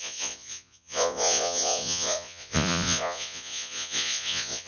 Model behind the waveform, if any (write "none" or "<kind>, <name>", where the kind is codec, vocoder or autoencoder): vocoder, Vocos